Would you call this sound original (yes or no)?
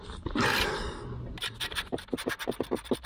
yes